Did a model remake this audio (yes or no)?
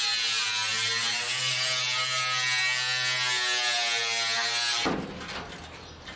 no